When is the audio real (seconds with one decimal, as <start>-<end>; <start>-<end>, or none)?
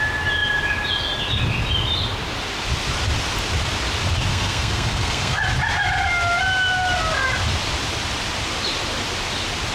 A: 0.0-4.3; 5.4-9.7